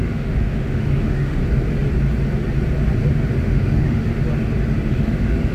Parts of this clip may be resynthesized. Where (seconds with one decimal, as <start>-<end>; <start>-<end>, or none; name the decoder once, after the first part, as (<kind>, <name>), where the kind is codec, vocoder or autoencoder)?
0.0-1.4 (autoencoder, DAC-VAE); 3.4-4.1; 4.9-5.5